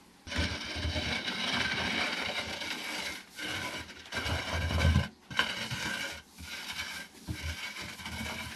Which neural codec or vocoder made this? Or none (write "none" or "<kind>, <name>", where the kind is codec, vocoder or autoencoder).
vocoder, BigVGAN v2